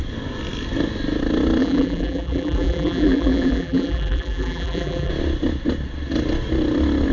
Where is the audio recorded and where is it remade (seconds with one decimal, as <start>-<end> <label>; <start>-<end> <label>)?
0.0-1.6 recorded; 1.6-5.1 remade; 5.1-7.1 recorded